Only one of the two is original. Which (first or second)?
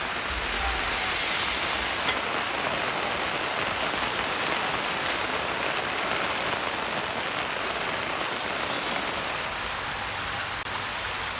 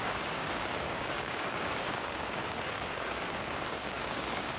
first